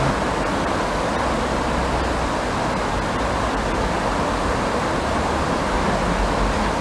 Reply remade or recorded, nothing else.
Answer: recorded